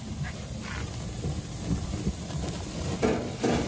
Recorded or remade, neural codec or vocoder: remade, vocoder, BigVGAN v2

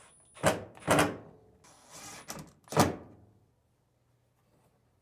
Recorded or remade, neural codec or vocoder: recorded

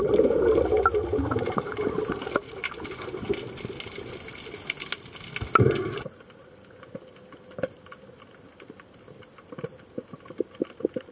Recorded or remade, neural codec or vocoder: recorded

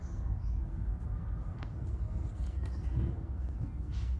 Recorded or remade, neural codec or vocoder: remade, codec, SNAC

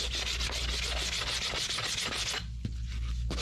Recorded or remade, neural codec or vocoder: recorded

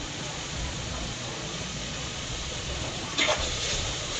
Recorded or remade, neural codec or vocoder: remade, vocoder, Vocos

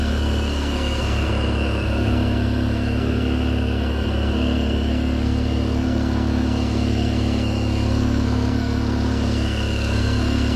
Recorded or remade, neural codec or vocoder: remade, codec, SNAC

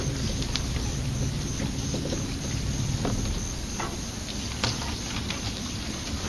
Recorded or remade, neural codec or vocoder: recorded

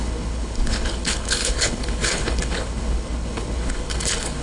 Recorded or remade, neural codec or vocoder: remade, codec, HILCodec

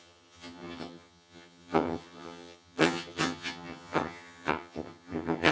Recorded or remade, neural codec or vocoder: remade, vocoder, HiFi-GAN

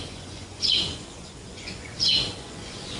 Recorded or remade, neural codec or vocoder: remade, vocoder, Vocos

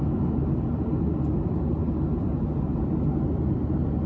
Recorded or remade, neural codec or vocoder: recorded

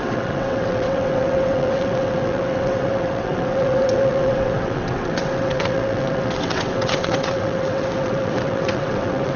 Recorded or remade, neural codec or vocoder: remade, vocoder, WaveNeXt